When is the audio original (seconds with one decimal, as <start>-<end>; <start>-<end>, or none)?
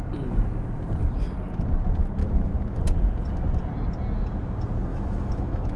0.0-2.2; 2.8-4.9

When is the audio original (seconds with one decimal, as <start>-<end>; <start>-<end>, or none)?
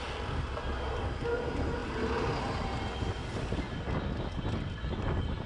0.0-5.5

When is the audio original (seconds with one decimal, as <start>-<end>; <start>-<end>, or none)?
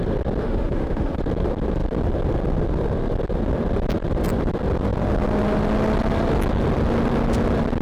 0.0-0.4; 1.2-7.8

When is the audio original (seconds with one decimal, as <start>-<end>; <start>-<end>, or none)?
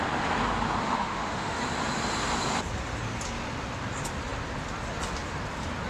0.0-0.8; 1.6-5.9